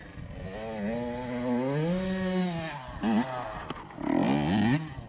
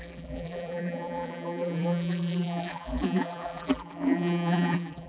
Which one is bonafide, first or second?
first